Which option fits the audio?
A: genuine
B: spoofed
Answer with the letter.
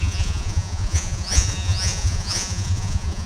B